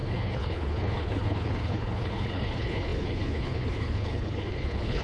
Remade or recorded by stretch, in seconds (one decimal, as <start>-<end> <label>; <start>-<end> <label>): 0.0-5.0 remade